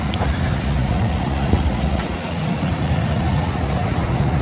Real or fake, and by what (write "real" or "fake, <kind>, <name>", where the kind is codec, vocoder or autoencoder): fake, vocoder, Vocos